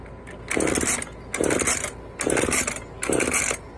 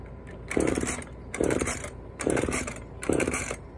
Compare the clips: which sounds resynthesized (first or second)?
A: second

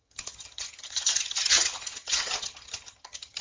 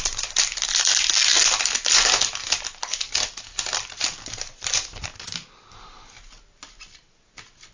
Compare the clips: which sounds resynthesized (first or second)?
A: first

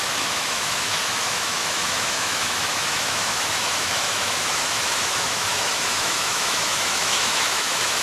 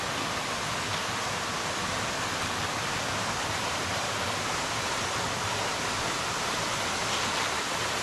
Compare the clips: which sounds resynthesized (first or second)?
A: first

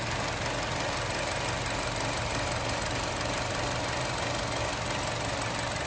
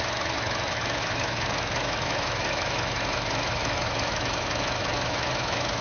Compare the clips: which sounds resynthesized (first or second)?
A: second